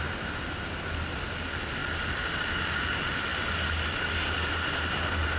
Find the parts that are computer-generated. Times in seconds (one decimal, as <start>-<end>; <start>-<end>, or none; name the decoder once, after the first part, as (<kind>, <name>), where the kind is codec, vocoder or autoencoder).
none